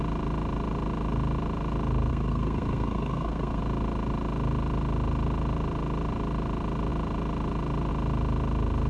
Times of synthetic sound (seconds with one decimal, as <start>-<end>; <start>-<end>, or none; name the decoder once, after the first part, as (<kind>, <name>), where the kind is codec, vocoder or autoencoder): 2.1-3.6 (codec, SNAC)